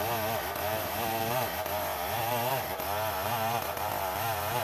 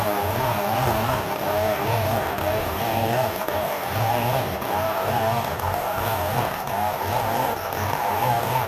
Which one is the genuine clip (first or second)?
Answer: first